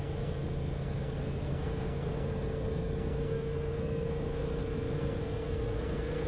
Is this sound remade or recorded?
remade